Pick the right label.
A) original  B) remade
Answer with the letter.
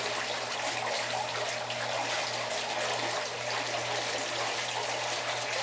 A